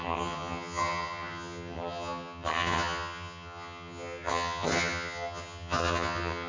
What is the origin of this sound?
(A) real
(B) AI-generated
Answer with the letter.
B